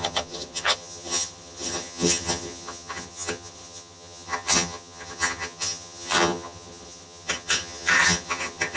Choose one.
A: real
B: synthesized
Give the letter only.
B